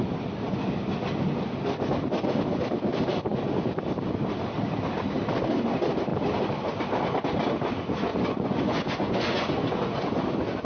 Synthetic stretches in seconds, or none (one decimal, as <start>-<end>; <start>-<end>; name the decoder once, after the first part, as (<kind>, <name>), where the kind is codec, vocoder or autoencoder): 8.1-10.2 (vocoder, Vocos)